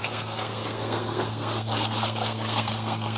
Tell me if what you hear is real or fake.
fake